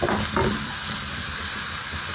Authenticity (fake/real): real